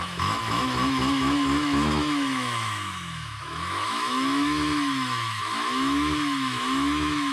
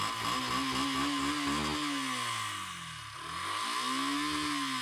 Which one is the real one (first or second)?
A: second